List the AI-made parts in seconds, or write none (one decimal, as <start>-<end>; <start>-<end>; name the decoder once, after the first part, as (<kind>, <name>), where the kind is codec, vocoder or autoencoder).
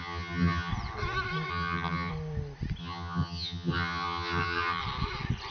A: 0.0-0.7 (vocoder, HiFi-GAN); 1.5-2.1; 2.8-4.8